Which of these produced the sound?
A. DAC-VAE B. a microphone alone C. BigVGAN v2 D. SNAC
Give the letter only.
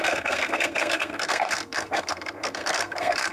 D